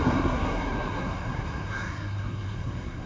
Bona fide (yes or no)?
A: no